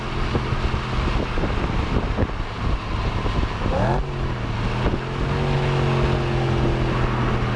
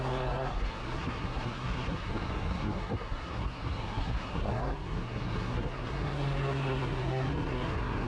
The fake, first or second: second